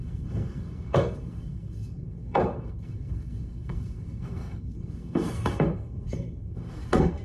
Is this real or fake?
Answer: fake